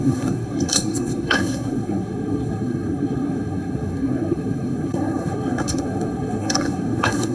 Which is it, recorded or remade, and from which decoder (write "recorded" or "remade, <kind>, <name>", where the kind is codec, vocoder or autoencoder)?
remade, codec, SNAC